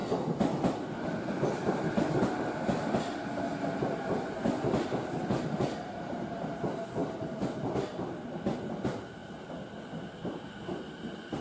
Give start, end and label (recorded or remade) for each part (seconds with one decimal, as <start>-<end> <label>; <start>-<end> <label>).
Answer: 0.0-11.4 recorded